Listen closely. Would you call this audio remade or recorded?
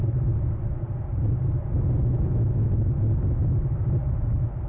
recorded